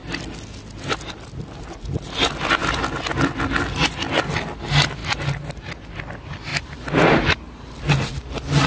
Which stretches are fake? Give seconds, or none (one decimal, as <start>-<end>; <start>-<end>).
none